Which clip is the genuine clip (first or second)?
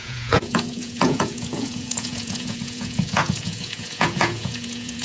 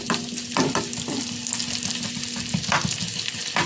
second